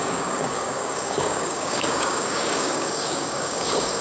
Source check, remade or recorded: remade